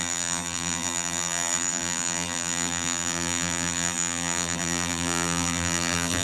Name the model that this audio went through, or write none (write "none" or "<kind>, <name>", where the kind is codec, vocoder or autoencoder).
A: vocoder, BigVGAN v2